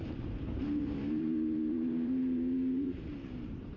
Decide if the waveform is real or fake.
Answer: fake